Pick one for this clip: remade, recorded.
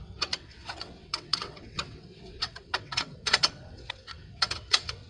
remade